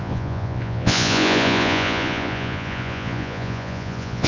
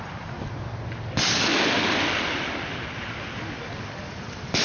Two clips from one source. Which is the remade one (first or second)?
first